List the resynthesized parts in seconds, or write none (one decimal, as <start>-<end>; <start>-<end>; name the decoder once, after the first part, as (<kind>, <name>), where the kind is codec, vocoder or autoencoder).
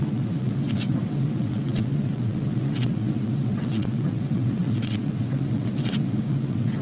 0.0-6.8 (vocoder, WaveNeXt)